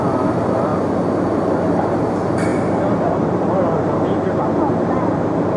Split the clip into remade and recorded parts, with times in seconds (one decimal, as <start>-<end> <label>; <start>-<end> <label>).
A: 0.0-0.7 remade; 0.7-1.8 recorded; 1.8-5.6 remade